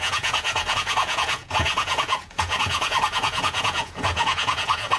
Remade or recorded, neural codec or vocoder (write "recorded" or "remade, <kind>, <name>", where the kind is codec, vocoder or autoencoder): remade, vocoder, Vocos